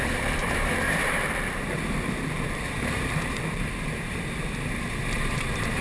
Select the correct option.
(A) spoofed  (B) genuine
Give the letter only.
A